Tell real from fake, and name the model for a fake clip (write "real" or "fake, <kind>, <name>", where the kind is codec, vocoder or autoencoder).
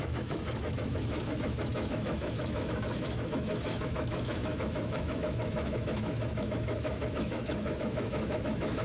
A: fake, autoencoder, DAC-VAE